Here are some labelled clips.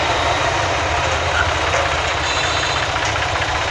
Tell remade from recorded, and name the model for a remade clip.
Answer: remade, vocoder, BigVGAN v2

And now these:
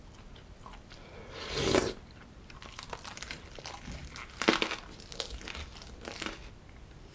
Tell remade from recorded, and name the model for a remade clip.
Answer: recorded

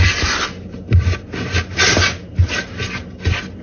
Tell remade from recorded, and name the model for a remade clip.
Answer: recorded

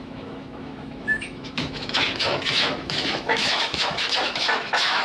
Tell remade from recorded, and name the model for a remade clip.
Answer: remade, autoencoder, DAC-VAE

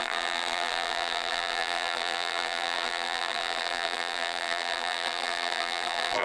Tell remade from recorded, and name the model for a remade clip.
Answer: remade, vocoder, BigVGAN v2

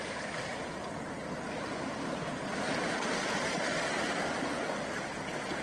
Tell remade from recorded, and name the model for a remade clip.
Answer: recorded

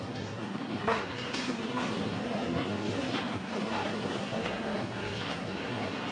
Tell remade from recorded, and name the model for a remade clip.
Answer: remade, codec, SNAC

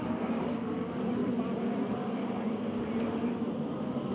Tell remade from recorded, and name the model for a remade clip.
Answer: recorded